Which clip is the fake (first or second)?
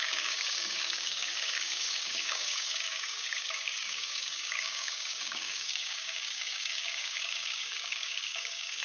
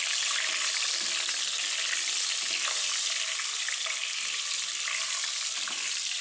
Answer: first